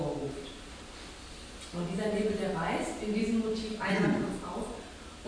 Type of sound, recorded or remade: recorded